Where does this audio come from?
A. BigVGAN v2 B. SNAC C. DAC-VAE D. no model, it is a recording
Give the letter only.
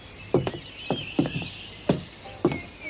A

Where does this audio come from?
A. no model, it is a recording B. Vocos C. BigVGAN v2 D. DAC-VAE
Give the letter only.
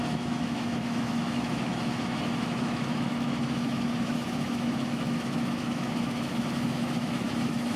D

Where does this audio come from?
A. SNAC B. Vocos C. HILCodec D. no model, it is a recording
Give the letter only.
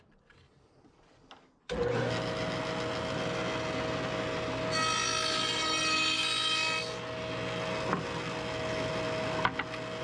D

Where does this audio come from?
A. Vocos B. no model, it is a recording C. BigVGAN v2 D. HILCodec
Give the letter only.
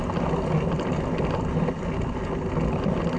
B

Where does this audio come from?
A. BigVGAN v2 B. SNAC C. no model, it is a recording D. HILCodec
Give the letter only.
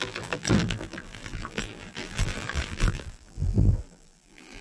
A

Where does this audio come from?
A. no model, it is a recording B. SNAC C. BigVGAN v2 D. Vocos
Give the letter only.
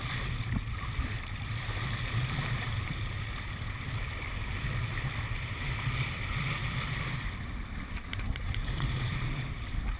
C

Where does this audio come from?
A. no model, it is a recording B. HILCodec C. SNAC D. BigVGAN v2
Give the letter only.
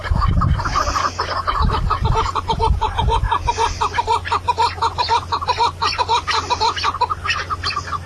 A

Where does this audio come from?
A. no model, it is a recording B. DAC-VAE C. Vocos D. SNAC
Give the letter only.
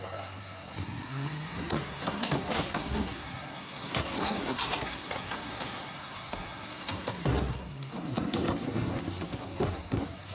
D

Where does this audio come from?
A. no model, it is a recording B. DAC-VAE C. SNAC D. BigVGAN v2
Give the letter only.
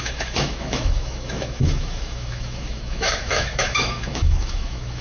B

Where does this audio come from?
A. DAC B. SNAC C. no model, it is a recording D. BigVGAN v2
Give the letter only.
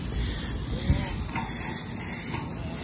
C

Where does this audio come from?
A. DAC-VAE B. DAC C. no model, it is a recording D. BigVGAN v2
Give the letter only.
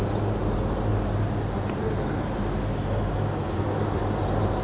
C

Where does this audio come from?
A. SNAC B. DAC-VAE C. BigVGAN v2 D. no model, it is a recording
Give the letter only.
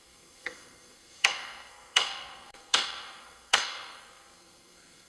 A